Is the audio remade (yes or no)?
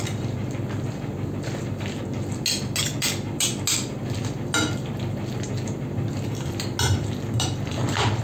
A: no